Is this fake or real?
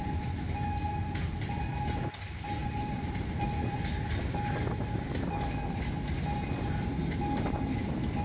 real